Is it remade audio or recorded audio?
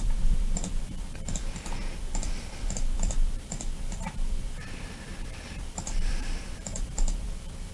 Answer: remade